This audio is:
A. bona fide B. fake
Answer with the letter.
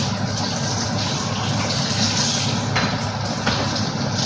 A